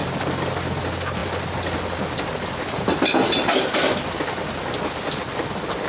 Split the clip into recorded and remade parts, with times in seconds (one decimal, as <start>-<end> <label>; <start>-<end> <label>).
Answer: 0.0-5.9 recorded